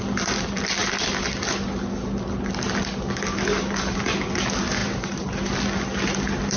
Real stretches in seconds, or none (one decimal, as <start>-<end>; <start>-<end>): 0.0-4.8; 5.4-6.6